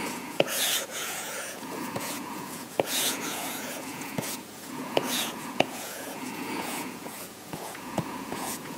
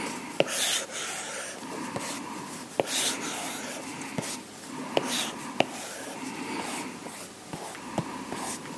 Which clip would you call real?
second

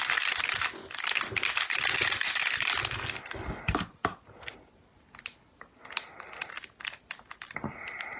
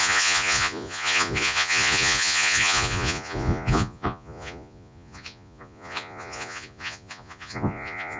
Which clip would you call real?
first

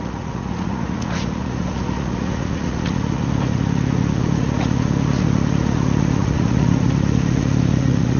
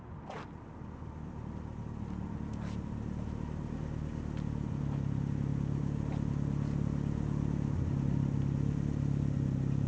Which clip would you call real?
second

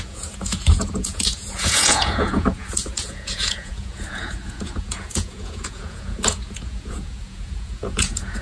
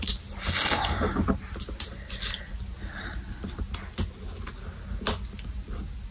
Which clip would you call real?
second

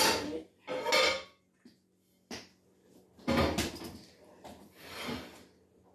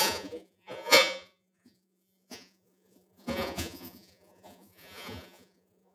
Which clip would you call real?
first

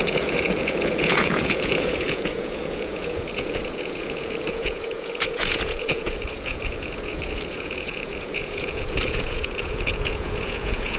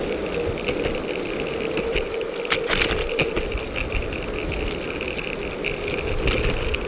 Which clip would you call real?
second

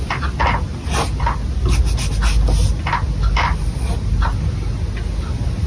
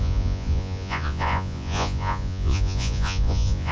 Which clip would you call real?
first